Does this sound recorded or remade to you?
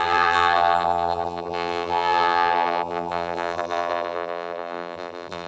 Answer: remade